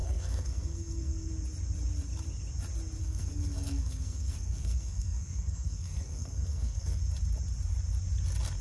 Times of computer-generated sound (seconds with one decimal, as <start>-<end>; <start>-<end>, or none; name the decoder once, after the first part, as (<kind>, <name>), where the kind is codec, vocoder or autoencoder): 0.0-1.3 (codec, SNAC); 3.0-7.0